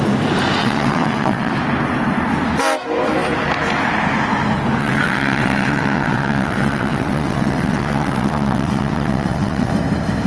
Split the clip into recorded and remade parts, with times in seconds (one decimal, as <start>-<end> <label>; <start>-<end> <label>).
0.0-0.6 recorded; 0.6-1.5 remade; 1.5-4.8 recorded; 4.8-9.7 remade; 9.7-10.3 recorded